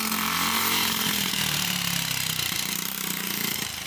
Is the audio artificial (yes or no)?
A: yes